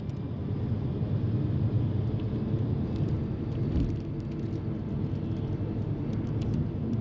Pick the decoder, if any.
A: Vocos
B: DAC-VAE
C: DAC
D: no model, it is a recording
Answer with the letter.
D